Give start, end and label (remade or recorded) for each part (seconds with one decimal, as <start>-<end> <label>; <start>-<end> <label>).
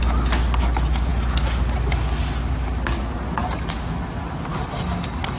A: 0.0-5.4 recorded